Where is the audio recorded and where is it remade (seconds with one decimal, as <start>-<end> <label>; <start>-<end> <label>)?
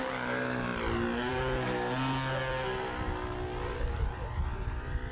0.0-5.1 recorded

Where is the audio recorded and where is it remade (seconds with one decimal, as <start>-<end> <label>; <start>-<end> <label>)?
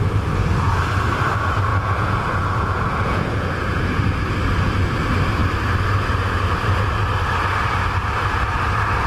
0.0-1.7 recorded; 1.7-4.0 remade; 4.0-9.1 recorded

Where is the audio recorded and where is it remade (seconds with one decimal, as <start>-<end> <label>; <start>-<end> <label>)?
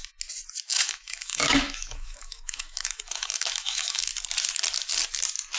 0.0-0.7 recorded; 0.7-4.1 remade; 4.1-5.6 recorded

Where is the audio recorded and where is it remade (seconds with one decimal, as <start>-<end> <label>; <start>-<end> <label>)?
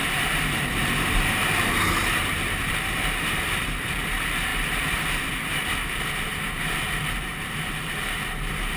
0.0-8.8 remade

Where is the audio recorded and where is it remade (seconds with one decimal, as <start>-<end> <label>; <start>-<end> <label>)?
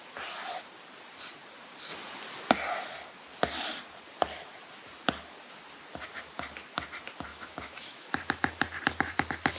0.0-7.3 recorded; 7.3-8.2 remade; 8.2-9.6 recorded